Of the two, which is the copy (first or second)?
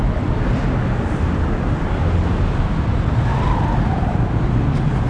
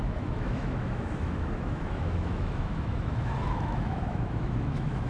second